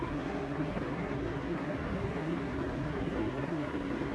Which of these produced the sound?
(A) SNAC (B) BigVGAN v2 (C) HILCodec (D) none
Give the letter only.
A